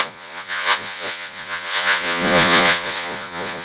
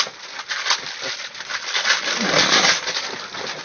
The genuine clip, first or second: second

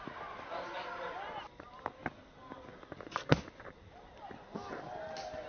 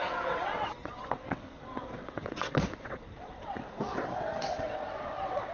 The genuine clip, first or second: first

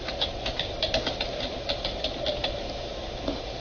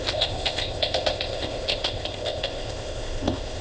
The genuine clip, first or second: first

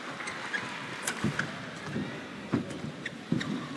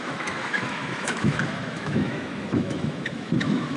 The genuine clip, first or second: first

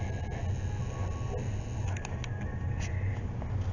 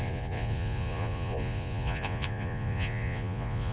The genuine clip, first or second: first